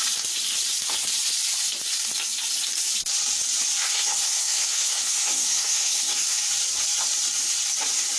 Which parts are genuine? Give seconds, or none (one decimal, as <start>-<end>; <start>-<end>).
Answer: 0.0-3.8; 6.4-8.2